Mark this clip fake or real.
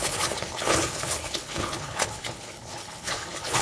fake